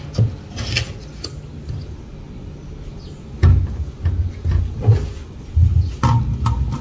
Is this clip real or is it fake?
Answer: real